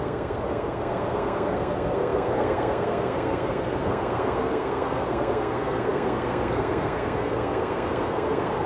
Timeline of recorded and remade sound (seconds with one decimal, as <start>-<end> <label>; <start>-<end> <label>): 0.0-8.7 remade